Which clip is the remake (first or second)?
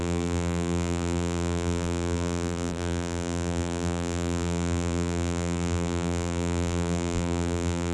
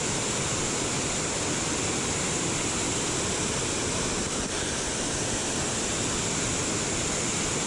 first